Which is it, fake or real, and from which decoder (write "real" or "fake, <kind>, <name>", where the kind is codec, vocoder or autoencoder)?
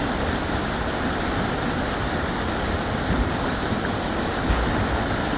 real